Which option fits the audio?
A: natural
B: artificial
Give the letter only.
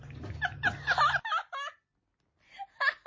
A